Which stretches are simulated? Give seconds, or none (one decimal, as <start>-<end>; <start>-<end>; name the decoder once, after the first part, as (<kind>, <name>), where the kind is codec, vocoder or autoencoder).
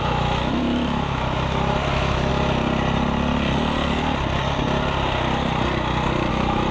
0.0-2.3 (autoencoder, DAC-VAE); 6.3-6.7